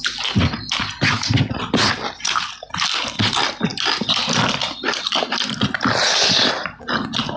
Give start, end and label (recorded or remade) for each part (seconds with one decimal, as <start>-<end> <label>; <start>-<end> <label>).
0.0-7.4 recorded